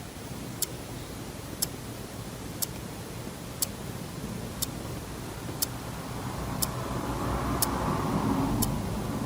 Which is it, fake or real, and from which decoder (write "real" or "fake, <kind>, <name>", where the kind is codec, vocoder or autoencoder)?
real